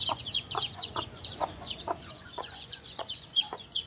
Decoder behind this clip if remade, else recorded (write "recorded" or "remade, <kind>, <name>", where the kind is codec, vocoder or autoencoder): remade, vocoder, Vocos